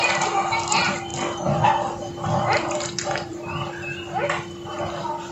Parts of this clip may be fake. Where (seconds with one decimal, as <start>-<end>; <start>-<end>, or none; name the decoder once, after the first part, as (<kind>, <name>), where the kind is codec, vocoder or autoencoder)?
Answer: 0.0-1.1 (vocoder, BigVGAN v2); 2.4-3.3; 4.7-5.3